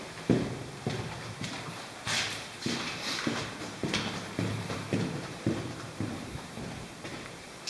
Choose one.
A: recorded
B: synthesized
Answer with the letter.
B